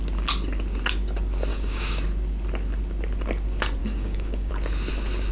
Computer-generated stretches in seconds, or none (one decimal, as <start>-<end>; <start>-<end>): 1.5-2.0; 3.8-4.5